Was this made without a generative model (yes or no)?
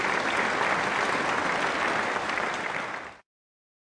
yes